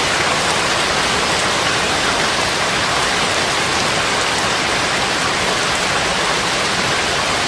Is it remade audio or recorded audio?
recorded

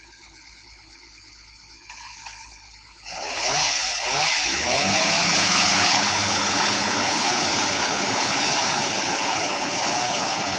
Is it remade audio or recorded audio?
remade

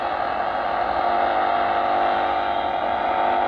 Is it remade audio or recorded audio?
recorded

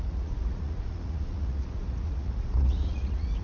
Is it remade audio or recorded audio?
remade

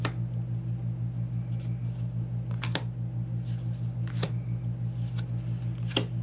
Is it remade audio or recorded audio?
recorded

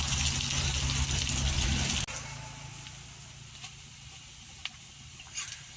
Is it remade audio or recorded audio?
recorded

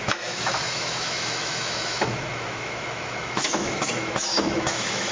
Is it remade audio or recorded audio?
remade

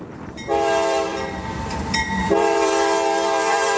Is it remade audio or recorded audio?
remade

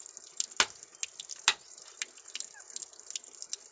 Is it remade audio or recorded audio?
recorded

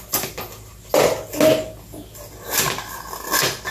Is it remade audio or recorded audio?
recorded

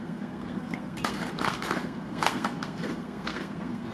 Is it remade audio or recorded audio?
remade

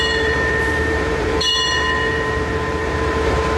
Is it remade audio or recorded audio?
remade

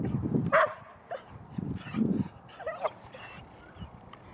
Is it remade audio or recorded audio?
recorded